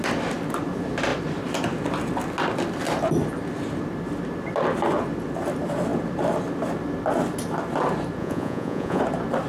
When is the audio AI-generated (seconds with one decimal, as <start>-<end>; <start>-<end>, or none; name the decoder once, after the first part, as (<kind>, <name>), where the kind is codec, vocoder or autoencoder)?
8.2-9.0 (vocoder, Vocos)